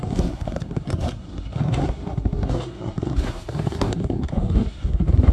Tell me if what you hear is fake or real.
fake